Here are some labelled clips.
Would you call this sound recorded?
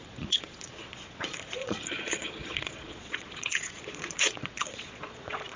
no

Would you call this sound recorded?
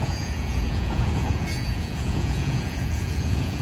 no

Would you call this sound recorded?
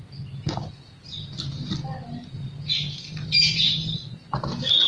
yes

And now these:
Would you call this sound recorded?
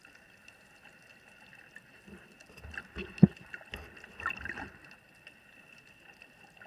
yes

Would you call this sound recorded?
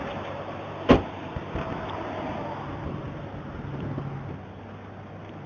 yes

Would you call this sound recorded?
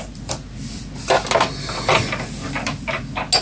yes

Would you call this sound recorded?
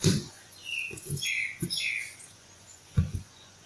no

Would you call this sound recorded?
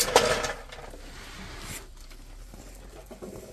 yes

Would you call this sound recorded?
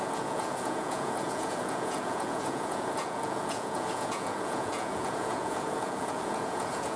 no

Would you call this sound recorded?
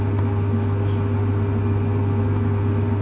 yes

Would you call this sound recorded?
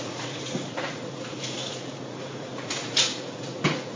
no